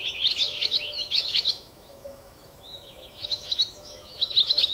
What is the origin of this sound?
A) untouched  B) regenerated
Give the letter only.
B